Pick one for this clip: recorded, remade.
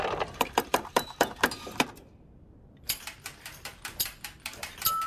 remade